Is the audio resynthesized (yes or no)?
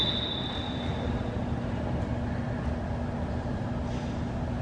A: no